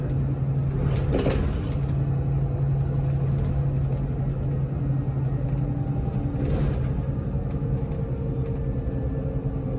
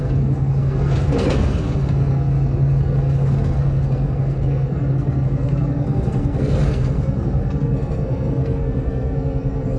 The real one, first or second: first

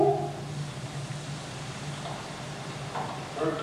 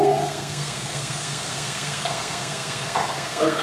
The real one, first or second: first